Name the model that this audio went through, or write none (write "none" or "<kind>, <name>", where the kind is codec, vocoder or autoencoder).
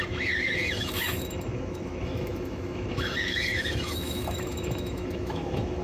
autoencoder, DAC-VAE